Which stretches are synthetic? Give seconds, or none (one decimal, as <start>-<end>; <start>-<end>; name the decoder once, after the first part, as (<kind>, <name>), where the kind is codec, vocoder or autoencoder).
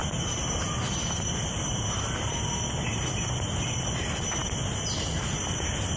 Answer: none